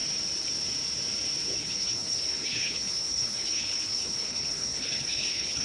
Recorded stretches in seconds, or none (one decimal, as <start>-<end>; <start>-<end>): 0.0-1.6

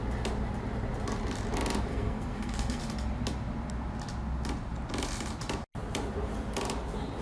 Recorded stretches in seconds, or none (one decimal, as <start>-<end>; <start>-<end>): 0.0-1.9; 2.8-7.2

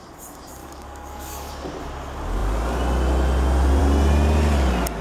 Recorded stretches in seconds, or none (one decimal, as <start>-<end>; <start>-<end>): 0.0-0.6; 1.5-5.0

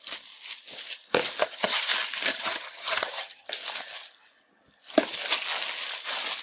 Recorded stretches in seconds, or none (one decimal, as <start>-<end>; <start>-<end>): 0.0-1.4; 1.9-2.3; 3.5-6.4

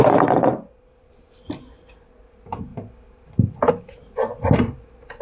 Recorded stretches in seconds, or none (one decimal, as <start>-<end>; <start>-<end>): none

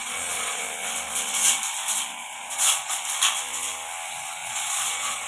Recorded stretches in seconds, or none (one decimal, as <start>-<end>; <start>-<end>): 0.6-2.2; 3.0-4.4

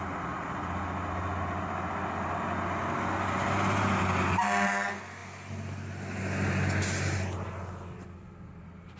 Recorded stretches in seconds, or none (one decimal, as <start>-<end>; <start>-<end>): 0.0-9.0

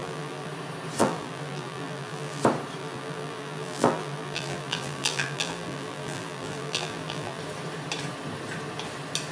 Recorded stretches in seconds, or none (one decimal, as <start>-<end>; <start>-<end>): 0.5-1.0; 2.4-2.8; 7.4-9.3